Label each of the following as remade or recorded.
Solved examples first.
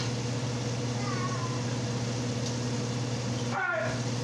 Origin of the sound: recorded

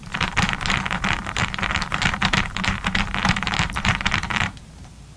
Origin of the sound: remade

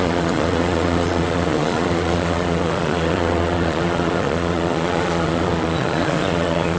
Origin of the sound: remade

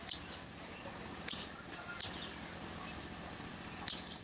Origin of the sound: recorded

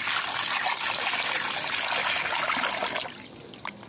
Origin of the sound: recorded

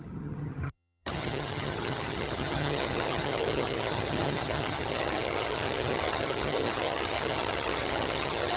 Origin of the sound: remade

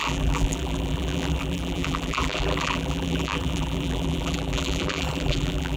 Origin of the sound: remade